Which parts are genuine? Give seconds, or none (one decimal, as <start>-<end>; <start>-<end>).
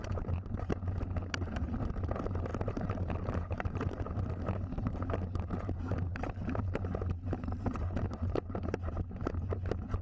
none